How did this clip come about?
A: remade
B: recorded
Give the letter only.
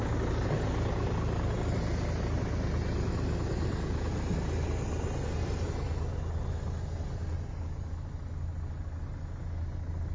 B